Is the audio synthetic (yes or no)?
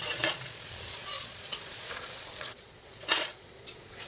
yes